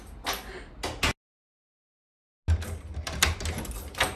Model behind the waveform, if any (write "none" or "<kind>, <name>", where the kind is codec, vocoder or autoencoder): none